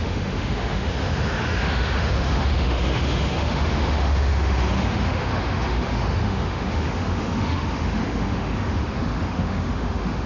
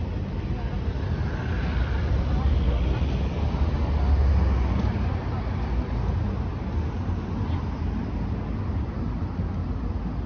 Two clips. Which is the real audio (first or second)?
second